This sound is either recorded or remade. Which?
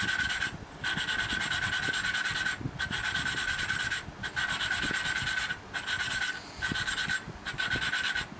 recorded